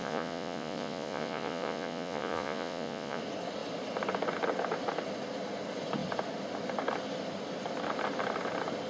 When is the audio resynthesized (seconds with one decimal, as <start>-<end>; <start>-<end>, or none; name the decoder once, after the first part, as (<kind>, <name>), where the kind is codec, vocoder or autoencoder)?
0.0-3.2 (vocoder, Vocos)